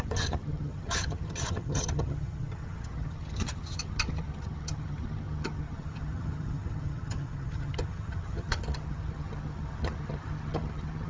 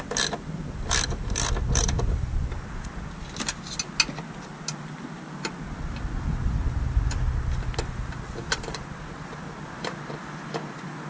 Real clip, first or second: second